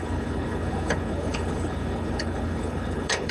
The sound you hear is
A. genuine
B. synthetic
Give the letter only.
B